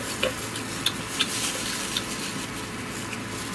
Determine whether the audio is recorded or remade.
recorded